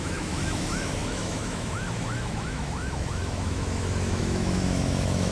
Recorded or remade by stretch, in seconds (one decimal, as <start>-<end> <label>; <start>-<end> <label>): 0.0-5.3 remade